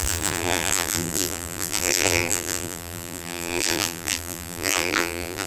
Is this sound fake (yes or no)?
yes